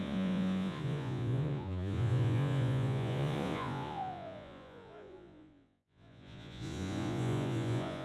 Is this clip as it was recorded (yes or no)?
no